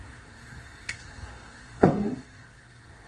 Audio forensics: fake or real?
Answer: fake